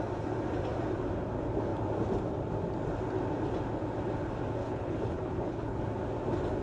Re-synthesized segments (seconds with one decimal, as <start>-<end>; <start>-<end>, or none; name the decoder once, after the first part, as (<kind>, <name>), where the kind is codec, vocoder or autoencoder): 4.6-5.8 (codec, HILCodec)